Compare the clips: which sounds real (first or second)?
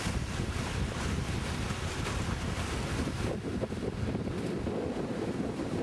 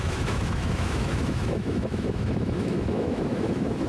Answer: first